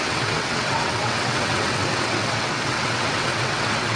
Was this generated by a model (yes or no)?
yes